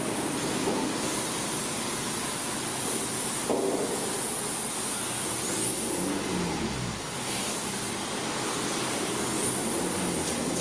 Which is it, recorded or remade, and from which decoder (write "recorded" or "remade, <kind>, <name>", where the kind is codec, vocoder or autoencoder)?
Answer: recorded